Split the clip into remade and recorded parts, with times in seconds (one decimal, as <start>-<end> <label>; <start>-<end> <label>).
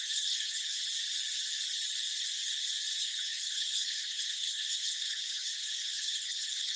0.0-0.8 remade; 0.8-3.0 recorded; 3.0-6.8 remade